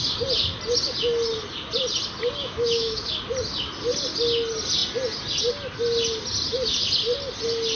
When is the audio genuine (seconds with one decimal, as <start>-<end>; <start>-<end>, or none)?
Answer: 0.0-2.4; 3.2-7.8